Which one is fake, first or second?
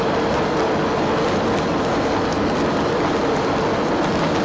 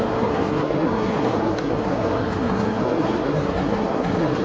second